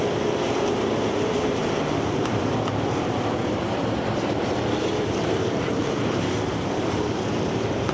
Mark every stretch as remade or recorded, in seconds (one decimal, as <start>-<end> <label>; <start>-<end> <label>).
0.0-1.6 remade; 1.6-2.2 recorded; 2.2-7.9 remade